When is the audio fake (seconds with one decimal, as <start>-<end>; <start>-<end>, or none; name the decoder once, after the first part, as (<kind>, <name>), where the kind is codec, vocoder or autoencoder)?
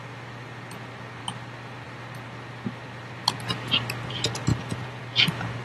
4.5-5.0 (vocoder, Vocos)